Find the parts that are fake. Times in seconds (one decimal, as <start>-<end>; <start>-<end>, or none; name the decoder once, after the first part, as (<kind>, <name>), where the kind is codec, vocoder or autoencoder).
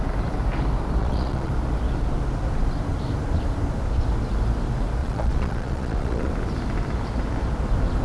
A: 1.0-1.5 (vocoder, Vocos); 5.0-6.3